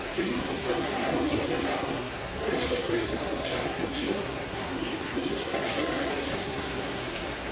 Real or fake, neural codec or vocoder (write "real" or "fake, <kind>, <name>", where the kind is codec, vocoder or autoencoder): fake, codec, SNAC